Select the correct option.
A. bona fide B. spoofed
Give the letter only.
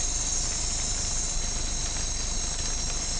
A